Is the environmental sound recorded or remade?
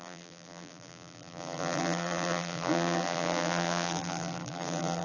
remade